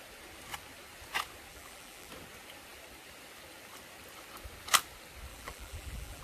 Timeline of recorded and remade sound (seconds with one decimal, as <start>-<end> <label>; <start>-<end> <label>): 0.0-1.5 recorded; 1.5-2.1 remade; 2.1-5.3 recorded; 5.3-6.2 remade

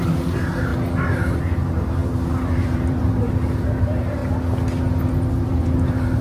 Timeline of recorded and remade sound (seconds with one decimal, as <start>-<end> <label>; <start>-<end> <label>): 0.0-0.7 remade; 0.7-1.4 recorded; 1.4-4.2 remade; 4.2-5.4 recorded; 5.4-6.2 remade

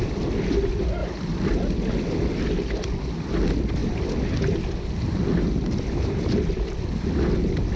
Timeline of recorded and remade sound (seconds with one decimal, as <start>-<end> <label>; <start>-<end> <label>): 0.0-1.0 recorded; 1.0-1.5 remade; 1.5-7.8 recorded

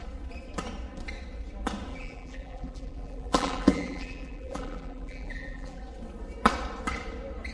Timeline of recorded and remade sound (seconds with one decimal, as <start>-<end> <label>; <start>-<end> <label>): 0.0-1.9 recorded; 1.9-5.8 remade; 5.8-7.5 recorded

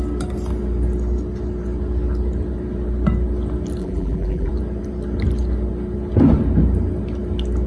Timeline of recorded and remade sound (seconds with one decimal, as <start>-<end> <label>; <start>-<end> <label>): 0.0-3.8 recorded; 3.8-4.5 remade; 4.5-7.7 recorded